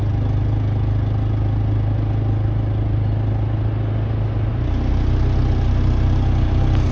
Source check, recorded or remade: recorded